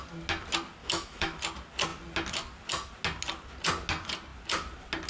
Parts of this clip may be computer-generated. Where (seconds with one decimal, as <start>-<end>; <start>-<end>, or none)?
0.8-1.4